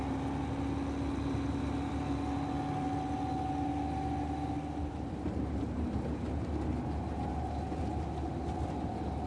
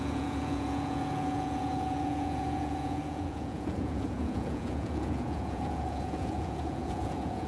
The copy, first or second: second